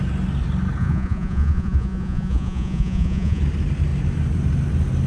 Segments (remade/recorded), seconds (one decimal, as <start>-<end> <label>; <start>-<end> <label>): 0.0-0.8 recorded; 0.8-3.4 remade; 3.4-5.1 recorded